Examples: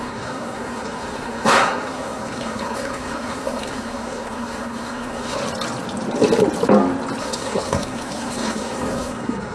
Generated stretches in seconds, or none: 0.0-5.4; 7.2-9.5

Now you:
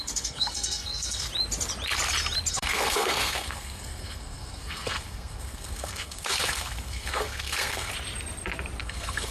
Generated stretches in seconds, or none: 0.0-1.3; 2.5-7.9; 8.8-9.3

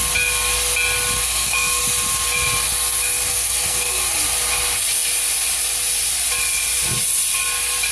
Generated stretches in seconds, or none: 1.2-1.8; 3.3-4.0

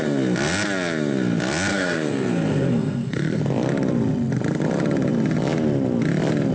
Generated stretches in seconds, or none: 1.7-3.4

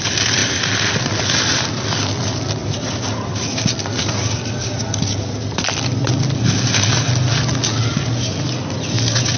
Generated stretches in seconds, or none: none

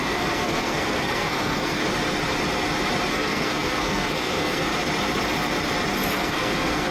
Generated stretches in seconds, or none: 0.0-1.8; 3.1-4.7; 6.1-6.9

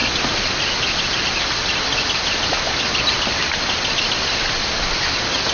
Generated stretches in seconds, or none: none

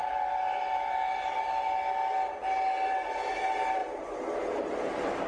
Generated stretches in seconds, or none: none